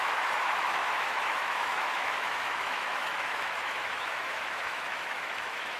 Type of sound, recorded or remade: remade